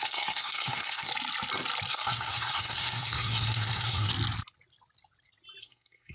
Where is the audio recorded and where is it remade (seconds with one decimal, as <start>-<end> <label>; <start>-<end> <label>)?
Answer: 0.0-1.1 remade; 1.1-1.9 recorded; 1.9-4.1 remade; 4.1-5.6 recorded; 5.6-6.1 remade

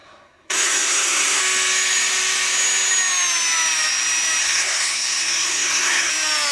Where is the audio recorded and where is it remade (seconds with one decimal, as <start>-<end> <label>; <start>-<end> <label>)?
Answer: 0.0-1.4 remade; 1.4-4.4 recorded; 4.4-6.1 remade; 6.1-6.5 recorded

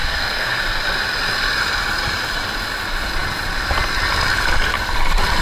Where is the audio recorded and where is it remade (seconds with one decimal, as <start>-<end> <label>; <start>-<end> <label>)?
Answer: 0.0-0.6 remade; 0.6-5.4 recorded

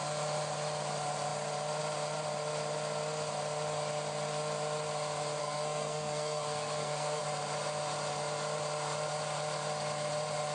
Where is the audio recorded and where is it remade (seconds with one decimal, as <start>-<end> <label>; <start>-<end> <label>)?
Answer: 0.0-5.4 recorded; 5.4-7.2 remade; 7.2-10.5 recorded

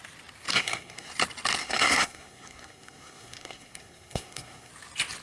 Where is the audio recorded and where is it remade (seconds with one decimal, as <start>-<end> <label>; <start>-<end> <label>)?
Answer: 0.0-0.5 recorded; 0.5-1.1 remade; 1.1-1.6 recorded; 1.6-4.7 remade; 4.7-5.2 recorded

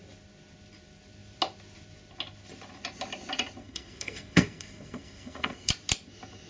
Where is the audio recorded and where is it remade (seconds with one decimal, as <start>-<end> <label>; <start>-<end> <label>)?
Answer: 0.0-3.6 recorded; 3.6-5.7 remade; 5.7-6.5 recorded

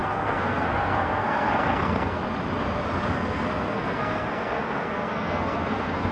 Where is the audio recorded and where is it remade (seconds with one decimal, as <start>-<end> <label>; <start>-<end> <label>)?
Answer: 0.0-2.2 remade; 2.2-3.1 recorded; 3.1-6.1 remade

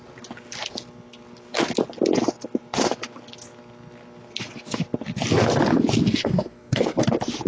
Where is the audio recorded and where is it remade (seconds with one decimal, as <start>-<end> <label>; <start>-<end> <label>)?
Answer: 0.0-6.1 recorded; 6.1-7.0 remade; 7.0-7.5 recorded